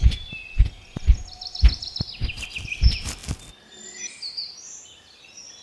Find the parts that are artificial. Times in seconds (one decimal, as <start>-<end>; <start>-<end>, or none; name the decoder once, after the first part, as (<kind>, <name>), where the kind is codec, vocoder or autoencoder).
none